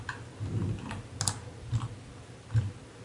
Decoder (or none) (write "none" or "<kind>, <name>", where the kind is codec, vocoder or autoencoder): none